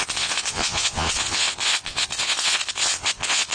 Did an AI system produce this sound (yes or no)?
yes